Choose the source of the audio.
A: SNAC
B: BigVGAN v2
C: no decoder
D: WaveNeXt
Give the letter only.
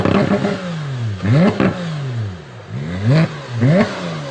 C